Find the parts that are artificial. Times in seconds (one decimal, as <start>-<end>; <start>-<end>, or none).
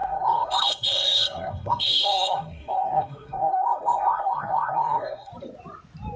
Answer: 0.0-5.3